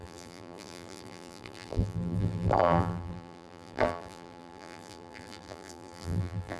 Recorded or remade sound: remade